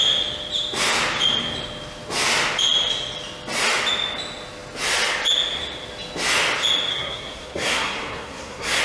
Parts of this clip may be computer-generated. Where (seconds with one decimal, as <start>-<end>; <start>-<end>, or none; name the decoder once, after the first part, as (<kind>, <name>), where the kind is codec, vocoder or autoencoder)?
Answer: 6.9-8.8 (codec, SNAC)

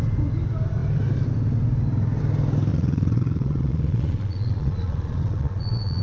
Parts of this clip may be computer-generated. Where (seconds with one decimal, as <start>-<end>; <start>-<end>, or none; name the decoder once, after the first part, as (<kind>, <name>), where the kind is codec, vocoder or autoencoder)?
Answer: 2.7-6.0 (vocoder, Vocos)

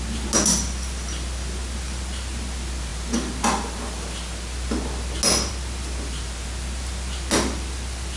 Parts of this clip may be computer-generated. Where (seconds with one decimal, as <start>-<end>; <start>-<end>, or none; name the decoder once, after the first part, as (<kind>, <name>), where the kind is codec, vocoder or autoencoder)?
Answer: none

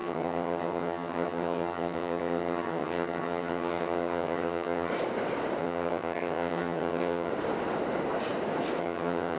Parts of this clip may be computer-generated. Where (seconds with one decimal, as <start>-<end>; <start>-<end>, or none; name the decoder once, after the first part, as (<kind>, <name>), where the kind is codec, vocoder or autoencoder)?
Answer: 0.0-4.9 (vocoder, HiFi-GAN); 5.6-7.3; 8.8-9.4

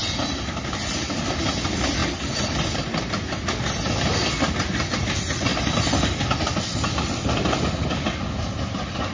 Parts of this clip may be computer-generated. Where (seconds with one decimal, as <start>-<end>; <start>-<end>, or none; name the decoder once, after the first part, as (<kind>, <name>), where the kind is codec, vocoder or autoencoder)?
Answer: none